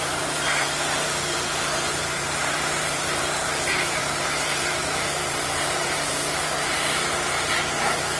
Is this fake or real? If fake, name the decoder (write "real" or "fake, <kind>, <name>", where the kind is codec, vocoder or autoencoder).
fake, vocoder, BigVGAN v2